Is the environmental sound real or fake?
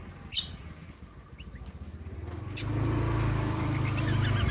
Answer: real